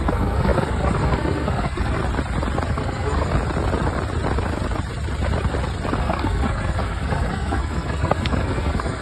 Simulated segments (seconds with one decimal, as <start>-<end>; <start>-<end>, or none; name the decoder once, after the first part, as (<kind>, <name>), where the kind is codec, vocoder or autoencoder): 0.0-2.0 (codec, SNAC); 2.7-3.3; 6.0-9.0